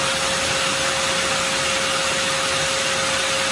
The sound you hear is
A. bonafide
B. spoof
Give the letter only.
A